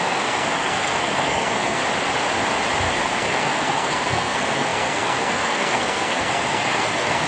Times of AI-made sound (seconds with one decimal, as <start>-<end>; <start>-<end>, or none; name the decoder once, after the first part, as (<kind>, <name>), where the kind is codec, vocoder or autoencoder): 0.0-1.8 (codec, SNAC); 2.9-7.3